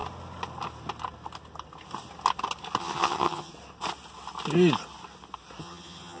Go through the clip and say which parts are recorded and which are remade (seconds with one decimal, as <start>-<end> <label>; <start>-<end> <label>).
0.0-2.8 recorded; 2.8-3.5 remade; 3.5-5.6 recorded; 5.6-6.2 remade